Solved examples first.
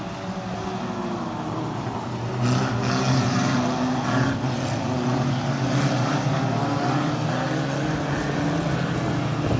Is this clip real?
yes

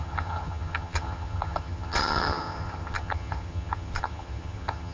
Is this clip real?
no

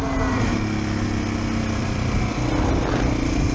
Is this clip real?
yes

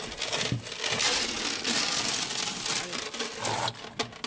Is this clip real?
yes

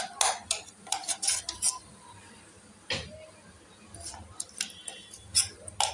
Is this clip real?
yes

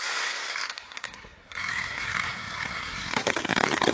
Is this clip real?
no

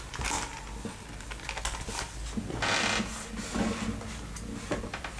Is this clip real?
yes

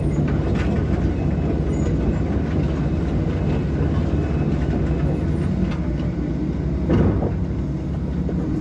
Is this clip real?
yes